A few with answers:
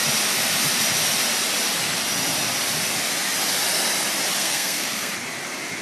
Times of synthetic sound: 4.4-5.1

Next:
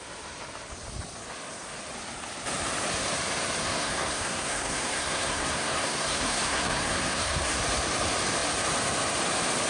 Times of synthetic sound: 3.6-7.6

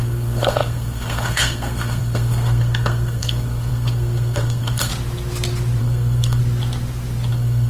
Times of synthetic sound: 0.0-4.9; 5.8-6.4; 7.3-7.7

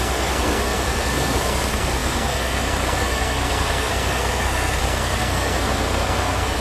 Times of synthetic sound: 0.0-6.6

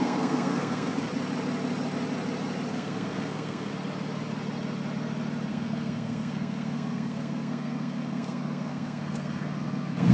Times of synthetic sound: 0.0-1.1; 2.7-3.7; 5.5-10.1

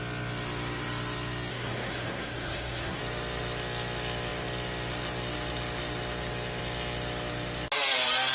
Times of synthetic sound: 1.5-3.0

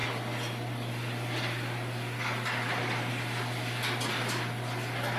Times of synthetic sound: none

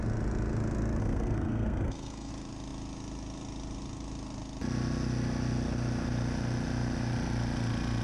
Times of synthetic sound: 1.0-2.3